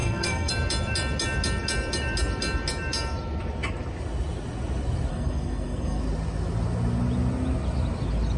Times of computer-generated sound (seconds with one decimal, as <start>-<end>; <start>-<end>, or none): 0.0-0.5; 5.1-6.0